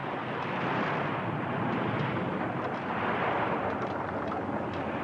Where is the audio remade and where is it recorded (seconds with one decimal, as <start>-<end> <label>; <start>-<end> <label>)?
0.0-5.0 recorded